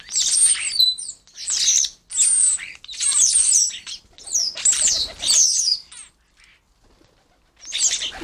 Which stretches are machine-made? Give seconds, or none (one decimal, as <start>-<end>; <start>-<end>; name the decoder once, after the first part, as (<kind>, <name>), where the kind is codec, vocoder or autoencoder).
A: 2.4-4.1 (vocoder, BigVGAN v2)